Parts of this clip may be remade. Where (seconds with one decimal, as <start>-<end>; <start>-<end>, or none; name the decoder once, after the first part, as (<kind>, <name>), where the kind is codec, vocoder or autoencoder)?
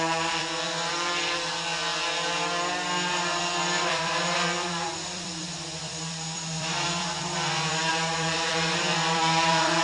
0.0-1.7 (vocoder, BigVGAN v2); 3.4-9.8